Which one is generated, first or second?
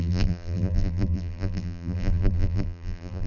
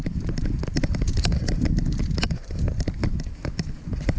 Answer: first